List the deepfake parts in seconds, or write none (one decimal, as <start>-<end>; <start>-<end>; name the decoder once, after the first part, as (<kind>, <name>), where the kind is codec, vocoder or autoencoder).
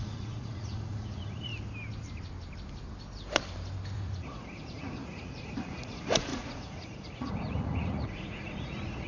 0.0-1.5 (vocoder, Vocos); 3.9-9.1